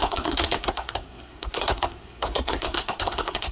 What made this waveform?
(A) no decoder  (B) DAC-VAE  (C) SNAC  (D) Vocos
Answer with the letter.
C